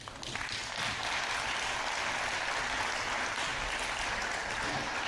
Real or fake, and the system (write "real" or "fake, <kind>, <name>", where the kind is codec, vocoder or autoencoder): real